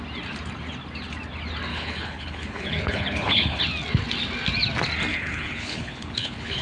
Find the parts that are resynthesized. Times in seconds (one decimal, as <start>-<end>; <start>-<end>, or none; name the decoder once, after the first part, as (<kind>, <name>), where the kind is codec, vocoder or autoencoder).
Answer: 1.7-3.6 (codec, HILCodec); 5.1-6.6